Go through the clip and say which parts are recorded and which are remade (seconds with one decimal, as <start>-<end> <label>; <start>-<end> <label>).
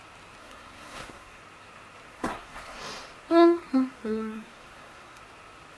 0.0-0.4 recorded; 0.4-1.4 remade; 1.4-2.1 recorded; 2.1-2.8 remade; 2.8-3.3 recorded; 3.3-5.2 remade; 5.2-5.8 recorded